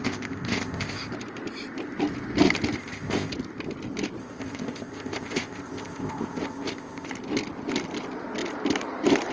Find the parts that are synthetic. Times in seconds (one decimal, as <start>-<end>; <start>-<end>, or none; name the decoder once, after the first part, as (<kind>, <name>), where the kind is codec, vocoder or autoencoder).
0.0-1.1 (codec, ZipCodec); 2.8-3.3; 4.2-7.1